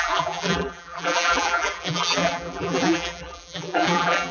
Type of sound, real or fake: fake